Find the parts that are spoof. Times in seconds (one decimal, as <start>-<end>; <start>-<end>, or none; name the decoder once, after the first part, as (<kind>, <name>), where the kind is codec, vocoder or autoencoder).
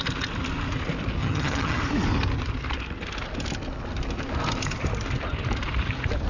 1.2-1.8 (vocoder, HiFi-GAN)